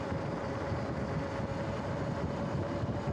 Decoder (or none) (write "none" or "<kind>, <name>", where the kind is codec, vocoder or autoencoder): none